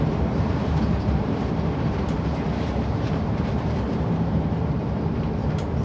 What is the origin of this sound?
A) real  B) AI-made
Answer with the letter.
B